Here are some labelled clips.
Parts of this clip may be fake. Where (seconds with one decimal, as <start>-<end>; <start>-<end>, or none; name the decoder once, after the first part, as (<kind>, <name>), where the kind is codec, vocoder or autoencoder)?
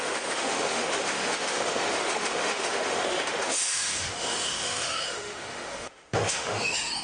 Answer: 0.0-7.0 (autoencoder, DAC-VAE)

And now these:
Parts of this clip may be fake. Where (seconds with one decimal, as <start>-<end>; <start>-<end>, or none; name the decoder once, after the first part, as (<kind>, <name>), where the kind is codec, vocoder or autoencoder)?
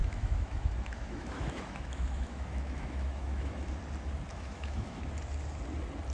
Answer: 0.0-3.7 (autoencoder, DAC-VAE); 4.3-5.0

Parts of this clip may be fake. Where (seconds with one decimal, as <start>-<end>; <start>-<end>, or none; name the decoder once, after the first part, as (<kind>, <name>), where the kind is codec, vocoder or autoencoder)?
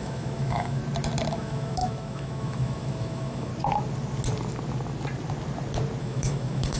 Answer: 0.0-0.8 (autoencoder, DAC-VAE); 1.3-3.5; 6.0-6.8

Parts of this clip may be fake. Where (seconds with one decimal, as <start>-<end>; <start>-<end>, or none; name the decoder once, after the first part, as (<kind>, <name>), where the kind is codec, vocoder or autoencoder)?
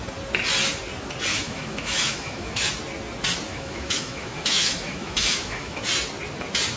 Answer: 1.3-2.7 (autoencoder, DAC-VAE); 3.5-5.8